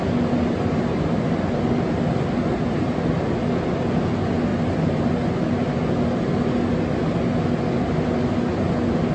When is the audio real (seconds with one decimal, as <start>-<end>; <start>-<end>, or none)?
0.0-9.1